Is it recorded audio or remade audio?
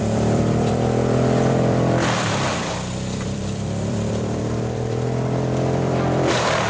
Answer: remade